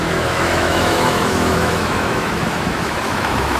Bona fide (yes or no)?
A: no